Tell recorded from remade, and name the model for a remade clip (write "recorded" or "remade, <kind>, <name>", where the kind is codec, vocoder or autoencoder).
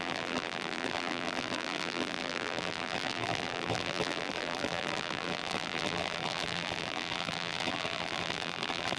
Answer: remade, vocoder, BigVGAN v2